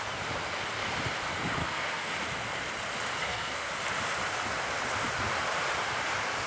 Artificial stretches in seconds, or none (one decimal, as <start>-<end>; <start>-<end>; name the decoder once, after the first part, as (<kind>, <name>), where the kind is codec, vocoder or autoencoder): 1.6-2.1 (codec, SNAC); 3.2-3.7